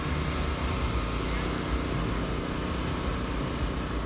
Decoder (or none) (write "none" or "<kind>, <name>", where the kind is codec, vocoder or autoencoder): none